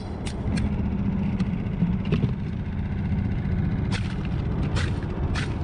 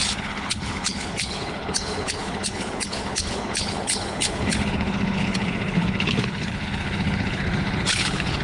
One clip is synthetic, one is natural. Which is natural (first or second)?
first